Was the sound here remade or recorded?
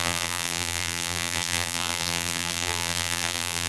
remade